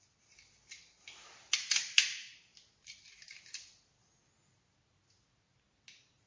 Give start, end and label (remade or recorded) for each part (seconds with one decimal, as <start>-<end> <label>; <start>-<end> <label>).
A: 0.0-6.3 recorded